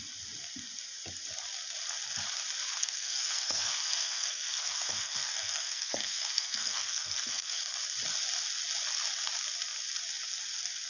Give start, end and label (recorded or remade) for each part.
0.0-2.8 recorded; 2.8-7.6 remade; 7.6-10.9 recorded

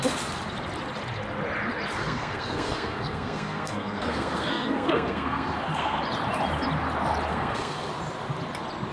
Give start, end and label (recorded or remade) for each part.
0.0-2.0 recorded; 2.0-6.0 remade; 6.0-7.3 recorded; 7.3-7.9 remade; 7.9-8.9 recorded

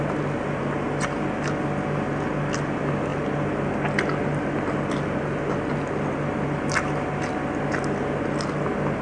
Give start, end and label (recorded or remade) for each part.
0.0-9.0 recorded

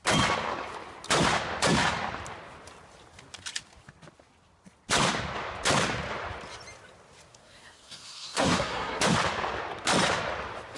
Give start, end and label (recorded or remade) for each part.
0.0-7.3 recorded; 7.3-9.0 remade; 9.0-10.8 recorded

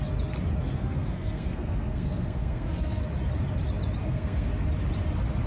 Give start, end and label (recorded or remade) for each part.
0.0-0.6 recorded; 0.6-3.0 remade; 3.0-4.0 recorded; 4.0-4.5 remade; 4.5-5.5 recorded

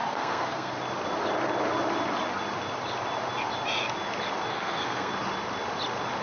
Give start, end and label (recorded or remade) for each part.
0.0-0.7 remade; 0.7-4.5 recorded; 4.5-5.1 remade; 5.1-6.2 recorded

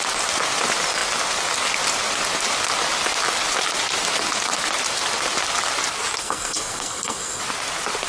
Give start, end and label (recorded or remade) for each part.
0.0-6.2 recorded; 6.2-7.4 remade; 7.4-8.1 recorded